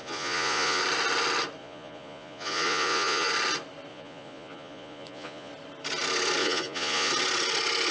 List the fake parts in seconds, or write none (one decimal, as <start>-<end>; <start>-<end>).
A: 0.0-0.8; 1.6-3.3; 3.9-5.5; 6.4-7.1